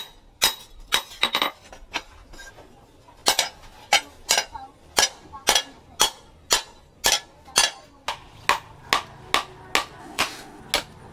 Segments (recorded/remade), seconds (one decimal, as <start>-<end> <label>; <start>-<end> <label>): 0.0-10.0 recorded; 10.0-10.6 remade; 10.6-11.1 recorded